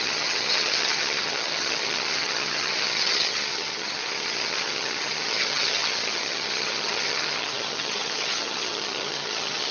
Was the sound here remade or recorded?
remade